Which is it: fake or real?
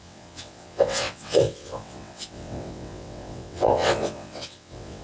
fake